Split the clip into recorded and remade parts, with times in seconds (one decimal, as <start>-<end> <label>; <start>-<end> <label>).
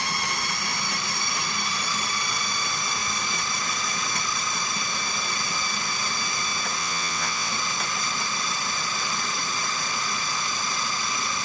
0.0-6.8 recorded; 6.8-7.5 remade; 7.5-11.4 recorded